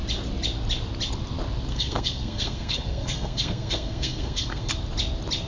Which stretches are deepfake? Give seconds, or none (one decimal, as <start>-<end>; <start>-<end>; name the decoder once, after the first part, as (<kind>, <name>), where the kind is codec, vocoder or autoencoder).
1.7-4.7 (codec, SNAC)